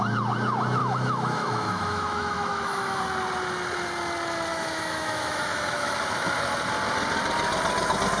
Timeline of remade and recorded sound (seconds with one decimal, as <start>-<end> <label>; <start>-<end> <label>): 0.0-0.8 recorded; 0.8-3.0 remade; 3.0-4.5 recorded; 4.5-6.3 remade; 6.3-8.2 recorded